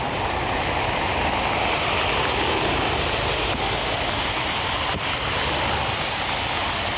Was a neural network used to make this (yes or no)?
no